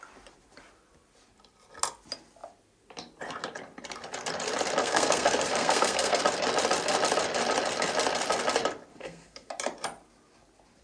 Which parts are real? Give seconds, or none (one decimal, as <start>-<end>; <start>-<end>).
0.0-4.8; 6.2-8.9; 9.5-10.8